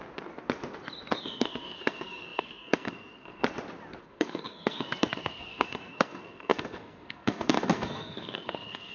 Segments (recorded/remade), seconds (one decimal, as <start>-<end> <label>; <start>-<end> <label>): 0.0-1.2 recorded; 1.2-3.4 remade; 3.4-4.0 recorded; 4.0-8.9 remade